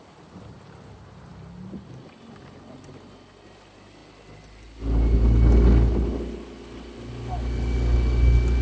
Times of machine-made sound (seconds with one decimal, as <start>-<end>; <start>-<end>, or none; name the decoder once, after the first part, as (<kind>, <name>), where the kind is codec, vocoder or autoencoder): none